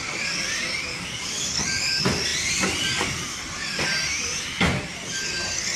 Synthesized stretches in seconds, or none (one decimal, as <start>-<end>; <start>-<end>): 0.9-1.6

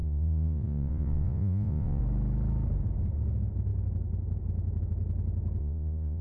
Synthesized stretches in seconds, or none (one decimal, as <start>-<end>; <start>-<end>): 0.0-2.0; 5.6-6.2

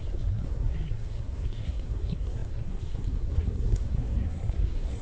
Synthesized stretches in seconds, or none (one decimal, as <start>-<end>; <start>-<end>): 0.0-5.0